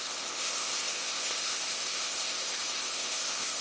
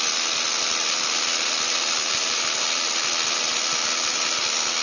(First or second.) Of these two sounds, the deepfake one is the first